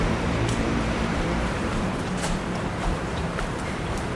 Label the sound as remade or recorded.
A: remade